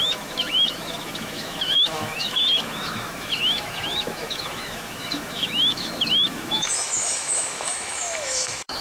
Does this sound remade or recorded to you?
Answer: remade